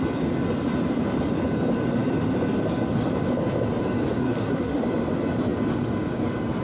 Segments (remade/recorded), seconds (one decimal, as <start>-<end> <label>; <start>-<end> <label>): 0.0-4.2 recorded; 4.2-4.8 remade; 4.8-6.6 recorded